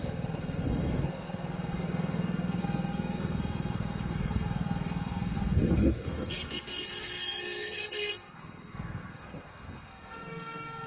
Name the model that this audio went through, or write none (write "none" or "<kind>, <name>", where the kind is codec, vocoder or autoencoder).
codec, SNAC